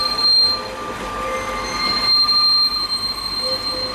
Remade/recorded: recorded